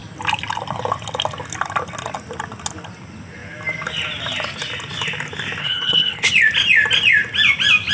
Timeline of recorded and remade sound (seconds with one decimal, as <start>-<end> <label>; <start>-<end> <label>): 0.0-5.6 recorded; 5.6-6.3 remade; 6.3-7.9 recorded